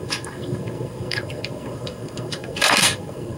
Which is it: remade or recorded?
remade